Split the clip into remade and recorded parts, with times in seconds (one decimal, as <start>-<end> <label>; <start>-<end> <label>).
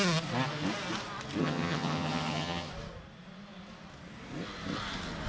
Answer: 0.0-1.4 recorded; 1.4-2.7 remade; 2.7-5.3 recorded